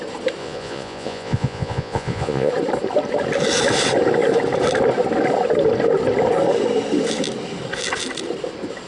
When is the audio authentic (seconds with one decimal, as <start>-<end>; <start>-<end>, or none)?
0.0-0.4; 2.5-8.9